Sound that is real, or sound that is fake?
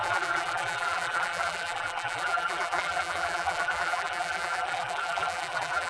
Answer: fake